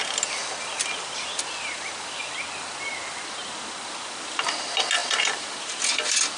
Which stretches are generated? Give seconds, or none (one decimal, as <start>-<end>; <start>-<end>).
none